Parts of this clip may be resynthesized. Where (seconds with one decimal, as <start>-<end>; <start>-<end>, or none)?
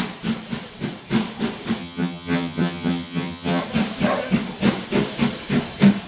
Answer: 1.8-3.6